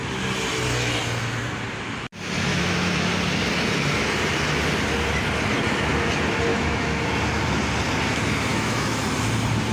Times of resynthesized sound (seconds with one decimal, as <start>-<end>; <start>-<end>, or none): 2.5-3.1; 6.5-7.1; 8.5-9.0